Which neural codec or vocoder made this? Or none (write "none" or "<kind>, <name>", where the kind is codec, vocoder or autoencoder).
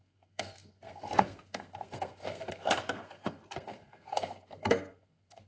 codec, SNAC